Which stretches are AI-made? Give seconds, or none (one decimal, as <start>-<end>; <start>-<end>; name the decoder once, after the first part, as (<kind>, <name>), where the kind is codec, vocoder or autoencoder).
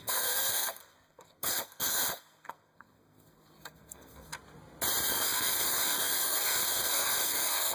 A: 0.0-4.3 (codec, SNAC); 5.1-7.7